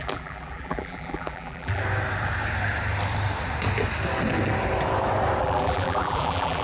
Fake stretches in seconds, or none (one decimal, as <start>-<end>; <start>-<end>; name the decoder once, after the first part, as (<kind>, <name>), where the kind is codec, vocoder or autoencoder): 0.0-1.8 (vocoder, BigVGAN v2); 5.4-6.6